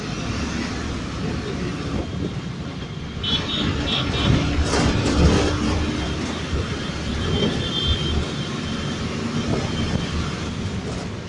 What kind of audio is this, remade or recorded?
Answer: recorded